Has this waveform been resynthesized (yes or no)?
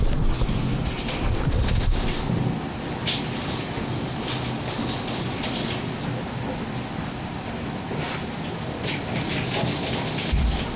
no